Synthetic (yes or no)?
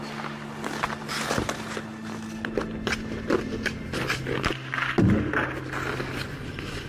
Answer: no